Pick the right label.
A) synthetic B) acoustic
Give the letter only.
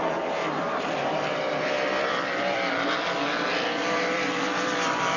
A